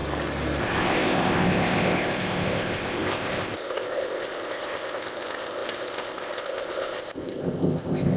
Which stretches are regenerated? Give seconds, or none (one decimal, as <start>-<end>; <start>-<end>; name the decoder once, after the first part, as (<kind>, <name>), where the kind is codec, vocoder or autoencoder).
0.6-8.2 (codec, ZipCodec)